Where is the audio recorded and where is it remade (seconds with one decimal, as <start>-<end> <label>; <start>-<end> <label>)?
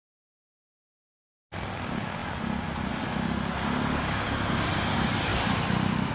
0.0-6.1 recorded